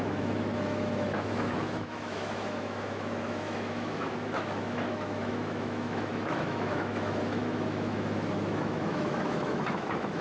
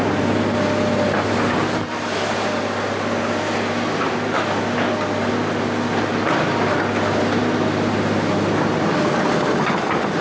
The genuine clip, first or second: second